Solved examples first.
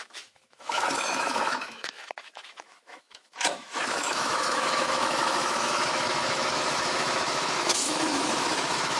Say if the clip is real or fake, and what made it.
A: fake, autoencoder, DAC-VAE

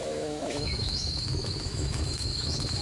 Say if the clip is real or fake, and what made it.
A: fake, autoencoder, DAC-VAE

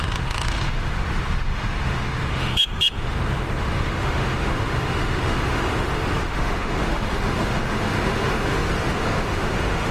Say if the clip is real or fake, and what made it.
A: fake, autoencoder, DAC-VAE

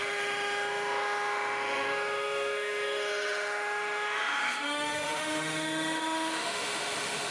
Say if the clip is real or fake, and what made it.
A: fake, autoencoder, DAC-VAE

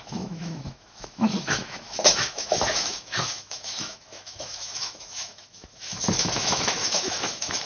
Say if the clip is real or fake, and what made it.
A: fake, autoencoder, DAC-VAE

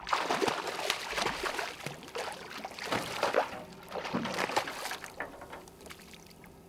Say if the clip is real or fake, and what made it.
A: real